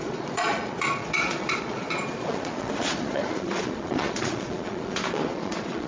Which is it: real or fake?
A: fake